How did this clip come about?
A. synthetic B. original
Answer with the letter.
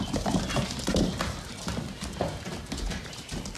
B